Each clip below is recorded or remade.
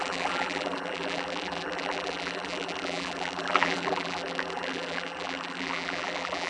remade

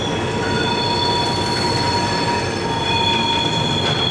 recorded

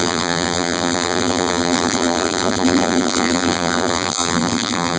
remade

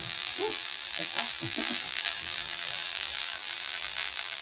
remade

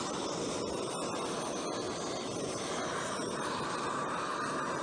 recorded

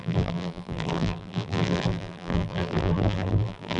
remade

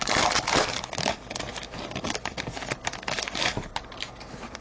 recorded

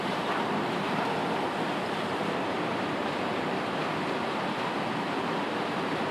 remade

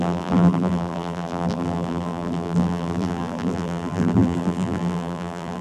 remade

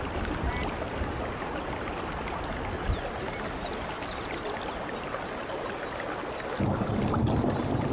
recorded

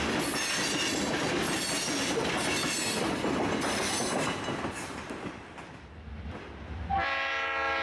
recorded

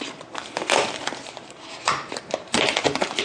remade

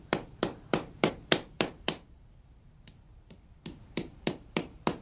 remade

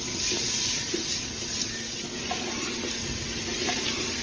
recorded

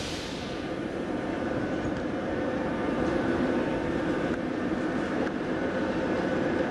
remade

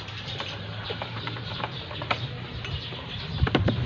remade